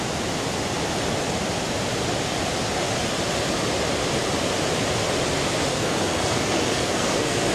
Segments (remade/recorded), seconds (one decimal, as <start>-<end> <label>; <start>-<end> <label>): 0.0-5.7 recorded; 5.7-7.5 remade